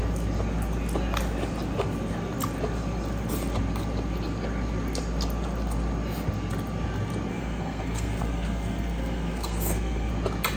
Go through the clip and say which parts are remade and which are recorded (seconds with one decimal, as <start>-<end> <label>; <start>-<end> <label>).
0.0-7.3 recorded; 7.3-10.1 remade; 10.1-10.6 recorded